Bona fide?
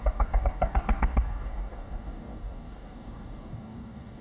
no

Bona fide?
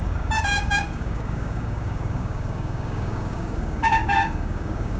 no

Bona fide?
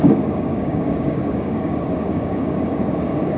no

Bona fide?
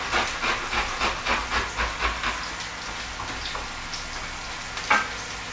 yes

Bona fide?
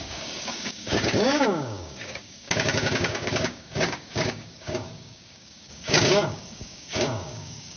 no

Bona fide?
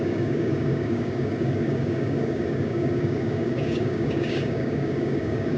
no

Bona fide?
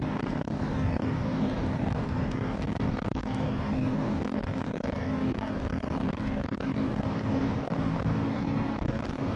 no